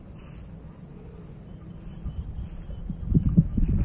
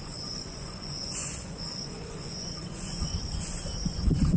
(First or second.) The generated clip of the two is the second